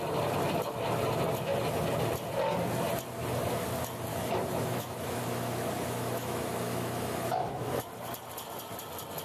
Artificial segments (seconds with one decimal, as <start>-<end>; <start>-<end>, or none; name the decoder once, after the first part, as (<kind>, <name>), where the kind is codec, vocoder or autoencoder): 4.1-7.8 (autoencoder, DAC-VAE)